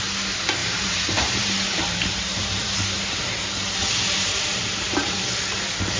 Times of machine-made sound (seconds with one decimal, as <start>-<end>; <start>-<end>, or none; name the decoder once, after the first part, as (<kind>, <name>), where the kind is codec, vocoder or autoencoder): 0.6-3.2 (vocoder, BigVGAN v2); 3.8-5.2